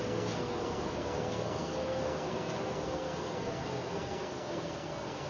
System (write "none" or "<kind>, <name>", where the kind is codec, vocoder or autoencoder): codec, SNAC